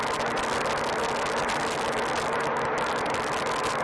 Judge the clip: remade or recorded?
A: recorded